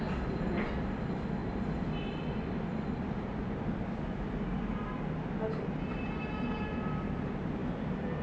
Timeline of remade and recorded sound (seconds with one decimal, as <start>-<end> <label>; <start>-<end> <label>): 0.0-8.2 recorded